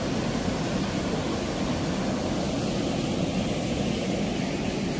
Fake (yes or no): no